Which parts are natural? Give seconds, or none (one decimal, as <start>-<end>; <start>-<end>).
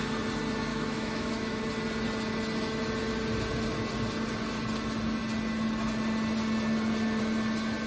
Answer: 0.0-0.7; 1.6-7.9